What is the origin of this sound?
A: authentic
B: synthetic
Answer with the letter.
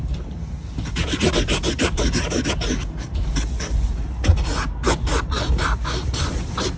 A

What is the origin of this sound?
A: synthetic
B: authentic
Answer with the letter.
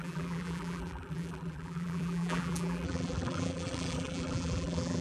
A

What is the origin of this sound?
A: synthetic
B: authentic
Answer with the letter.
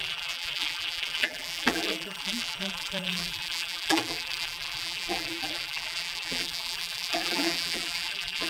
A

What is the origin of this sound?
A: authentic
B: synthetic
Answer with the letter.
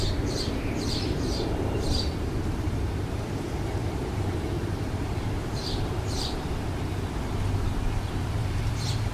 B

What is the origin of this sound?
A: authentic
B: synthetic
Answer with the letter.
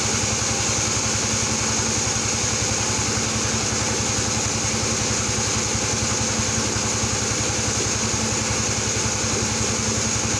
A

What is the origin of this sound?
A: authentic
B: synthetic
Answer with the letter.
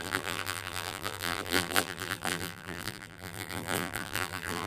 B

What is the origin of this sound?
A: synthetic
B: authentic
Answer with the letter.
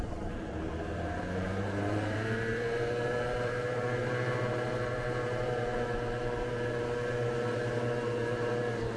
A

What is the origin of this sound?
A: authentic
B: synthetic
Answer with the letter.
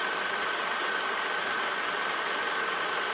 A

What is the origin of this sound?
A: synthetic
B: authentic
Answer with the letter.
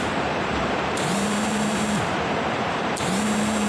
A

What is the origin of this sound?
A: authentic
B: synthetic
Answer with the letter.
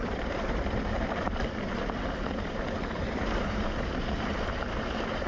B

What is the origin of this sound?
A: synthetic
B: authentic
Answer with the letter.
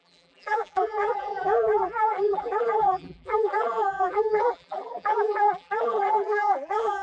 A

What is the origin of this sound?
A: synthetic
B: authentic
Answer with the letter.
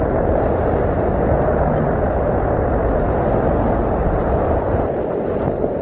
B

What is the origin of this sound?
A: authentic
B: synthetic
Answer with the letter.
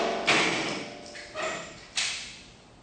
A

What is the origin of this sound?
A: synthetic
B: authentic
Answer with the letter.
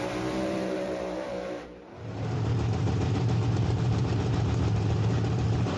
A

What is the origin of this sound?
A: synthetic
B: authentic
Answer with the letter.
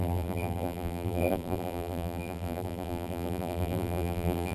A